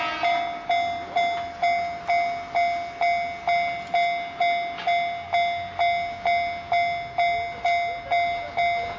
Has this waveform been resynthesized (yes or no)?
no